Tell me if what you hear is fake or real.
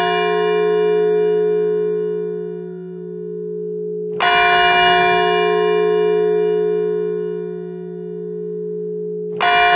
real